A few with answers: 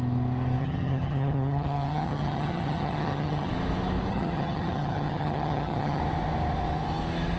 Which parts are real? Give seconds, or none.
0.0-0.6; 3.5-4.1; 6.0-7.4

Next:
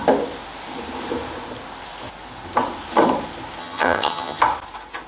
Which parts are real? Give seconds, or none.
0.0-3.6; 4.4-5.1

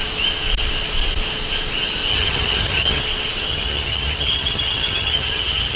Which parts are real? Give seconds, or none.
0.0-2.1; 3.0-3.5

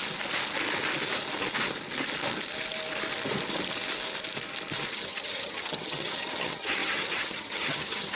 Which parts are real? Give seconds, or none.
0.0-4.9

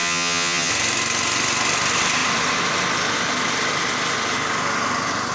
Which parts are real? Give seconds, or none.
0.7-5.3